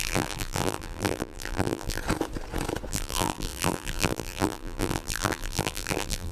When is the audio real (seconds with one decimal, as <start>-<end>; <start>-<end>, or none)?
2.0-2.9